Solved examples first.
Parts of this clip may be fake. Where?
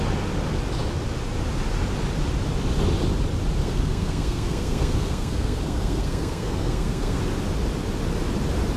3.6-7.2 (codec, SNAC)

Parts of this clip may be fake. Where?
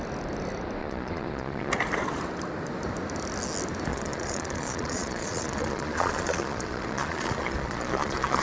0.8-1.7 (vocoder, Vocos); 3.9-8.4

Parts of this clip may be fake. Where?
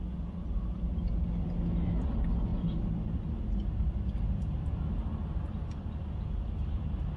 none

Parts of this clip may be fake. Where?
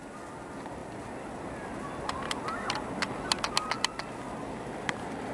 none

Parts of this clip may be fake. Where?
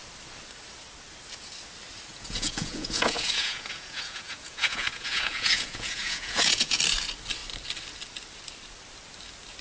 2.1-6.8 (vocoder, Vocos)